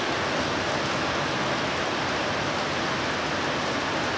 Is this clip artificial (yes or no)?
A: no